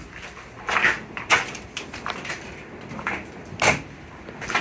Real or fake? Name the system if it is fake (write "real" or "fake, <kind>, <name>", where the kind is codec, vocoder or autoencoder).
real